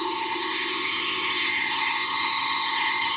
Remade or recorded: remade